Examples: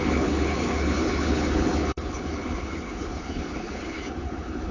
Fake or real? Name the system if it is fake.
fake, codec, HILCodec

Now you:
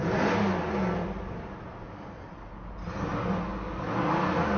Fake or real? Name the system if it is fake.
real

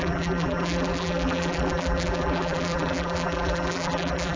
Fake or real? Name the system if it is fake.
fake, vocoder, BigVGAN v2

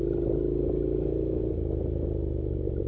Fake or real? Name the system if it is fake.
real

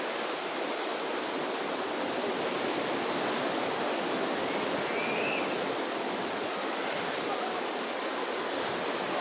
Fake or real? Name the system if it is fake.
real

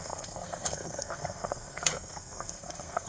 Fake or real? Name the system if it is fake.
fake, codec, SNAC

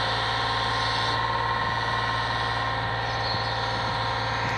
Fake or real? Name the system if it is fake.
real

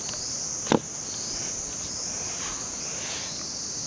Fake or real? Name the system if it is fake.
real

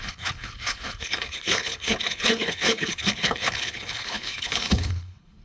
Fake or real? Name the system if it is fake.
fake, codec, HILCodec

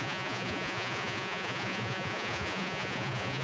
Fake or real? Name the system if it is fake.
fake, vocoder, Vocos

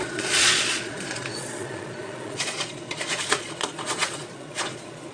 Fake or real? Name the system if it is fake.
fake, vocoder, Vocos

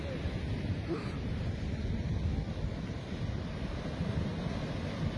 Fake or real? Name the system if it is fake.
real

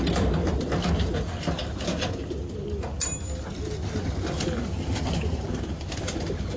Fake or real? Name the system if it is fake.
real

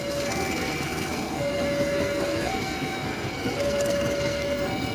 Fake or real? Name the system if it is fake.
fake, codec, SNAC